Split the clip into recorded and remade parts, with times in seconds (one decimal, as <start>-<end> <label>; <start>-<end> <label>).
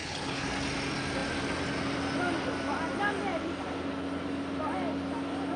0.0-0.5 remade; 0.5-5.6 recorded